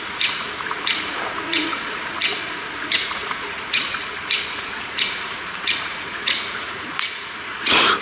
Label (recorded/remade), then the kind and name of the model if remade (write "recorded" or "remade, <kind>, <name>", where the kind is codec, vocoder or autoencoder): remade, vocoder, Vocos